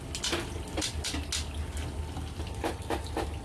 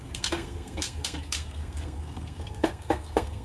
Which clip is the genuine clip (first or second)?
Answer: first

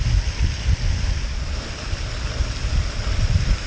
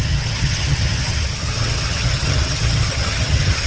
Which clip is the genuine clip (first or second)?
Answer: first